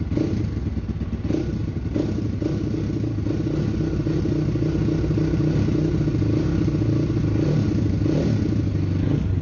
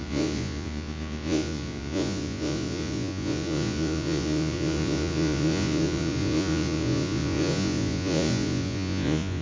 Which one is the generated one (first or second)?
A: second